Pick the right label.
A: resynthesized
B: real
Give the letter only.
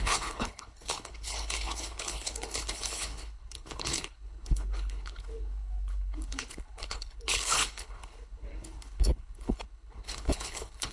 A